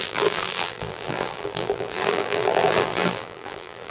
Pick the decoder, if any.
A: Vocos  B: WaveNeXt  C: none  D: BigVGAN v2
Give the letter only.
D